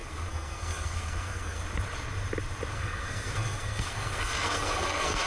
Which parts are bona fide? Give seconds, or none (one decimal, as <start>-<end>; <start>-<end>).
1.6-2.7